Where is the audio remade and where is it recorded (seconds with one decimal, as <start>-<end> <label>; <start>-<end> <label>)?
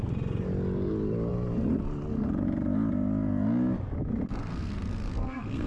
0.0-4.4 recorded; 4.4-5.7 remade